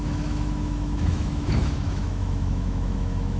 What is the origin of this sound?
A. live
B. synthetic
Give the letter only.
B